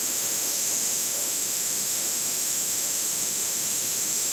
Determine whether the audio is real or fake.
fake